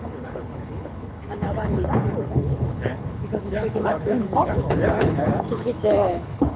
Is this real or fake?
fake